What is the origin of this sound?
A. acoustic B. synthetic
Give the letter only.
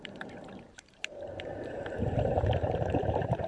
B